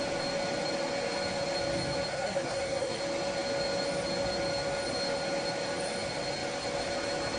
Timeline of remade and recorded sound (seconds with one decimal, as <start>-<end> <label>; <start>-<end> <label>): 0.0-2.1 recorded; 2.1-3.0 remade; 3.0-7.4 recorded